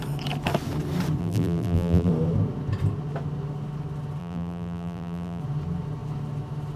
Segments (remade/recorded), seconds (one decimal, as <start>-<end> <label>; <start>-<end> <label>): 0.0-1.2 recorded; 1.2-2.1 remade; 2.1-4.2 recorded; 4.2-5.4 remade; 5.4-6.8 recorded